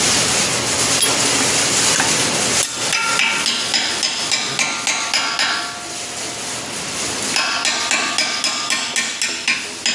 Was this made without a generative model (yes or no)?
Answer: yes